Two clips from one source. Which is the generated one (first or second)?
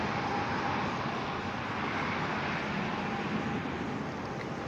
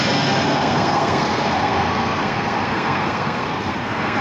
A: second